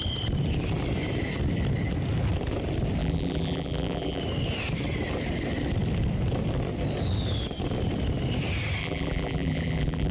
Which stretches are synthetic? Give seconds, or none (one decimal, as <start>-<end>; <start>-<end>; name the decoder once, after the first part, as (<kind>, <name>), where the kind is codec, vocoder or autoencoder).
3.0-4.2 (vocoder, BigVGAN v2); 8.8-10.1